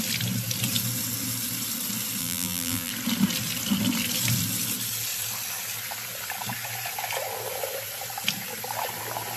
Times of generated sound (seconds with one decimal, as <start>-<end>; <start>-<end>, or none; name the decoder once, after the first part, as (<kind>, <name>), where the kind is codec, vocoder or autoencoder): 2.2-2.9 (vocoder, BigVGAN v2)